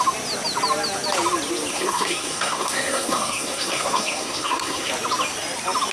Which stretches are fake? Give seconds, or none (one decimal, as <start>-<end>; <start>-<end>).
1.7-4.9